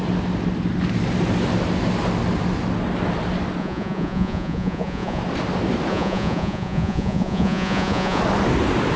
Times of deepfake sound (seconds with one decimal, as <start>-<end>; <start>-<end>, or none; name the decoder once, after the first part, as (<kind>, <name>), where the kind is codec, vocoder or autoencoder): 3.6-5.2 (vocoder, Vocos); 5.9-8.2